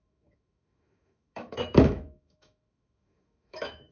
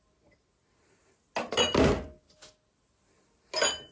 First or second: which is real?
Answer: second